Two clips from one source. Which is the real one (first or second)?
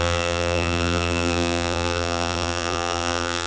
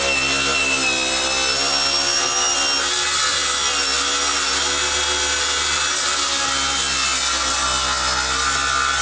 second